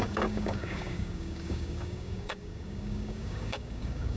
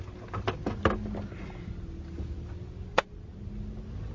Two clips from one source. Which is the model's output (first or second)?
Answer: first